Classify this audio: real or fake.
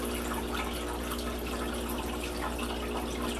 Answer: real